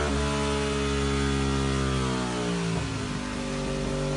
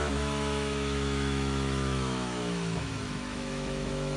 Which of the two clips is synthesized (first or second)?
second